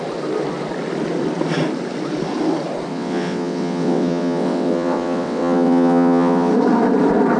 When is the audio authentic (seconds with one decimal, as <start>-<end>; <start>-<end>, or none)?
0.0-2.9; 6.5-7.4